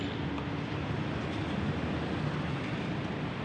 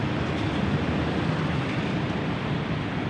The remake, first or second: second